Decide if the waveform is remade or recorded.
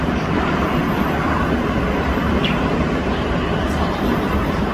remade